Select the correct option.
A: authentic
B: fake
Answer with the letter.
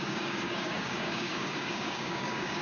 B